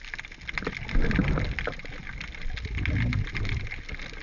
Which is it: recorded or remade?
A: recorded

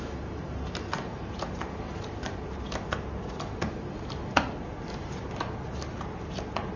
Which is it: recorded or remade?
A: recorded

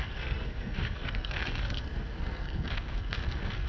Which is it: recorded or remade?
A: remade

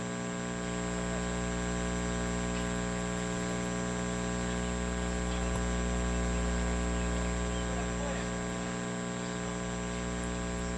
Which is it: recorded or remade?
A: recorded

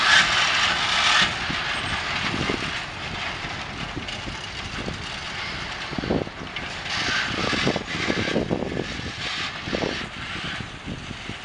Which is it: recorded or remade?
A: recorded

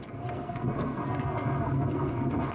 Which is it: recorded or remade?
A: remade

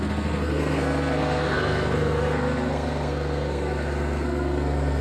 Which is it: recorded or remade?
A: remade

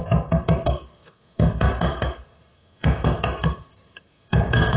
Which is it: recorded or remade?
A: remade